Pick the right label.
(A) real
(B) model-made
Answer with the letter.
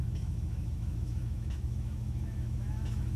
B